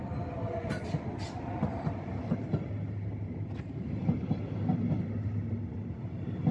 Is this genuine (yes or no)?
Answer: yes